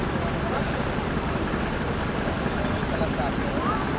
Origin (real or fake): real